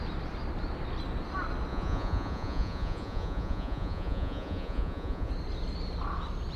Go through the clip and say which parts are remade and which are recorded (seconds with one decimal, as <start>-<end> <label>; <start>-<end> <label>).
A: 0.0-1.7 recorded; 1.7-5.3 remade; 5.3-6.6 recorded